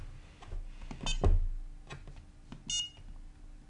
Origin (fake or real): real